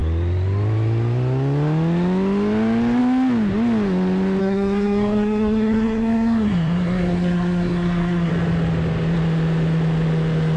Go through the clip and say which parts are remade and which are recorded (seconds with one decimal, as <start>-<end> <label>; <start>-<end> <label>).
0.0-4.4 recorded; 4.4-8.3 remade; 8.3-10.6 recorded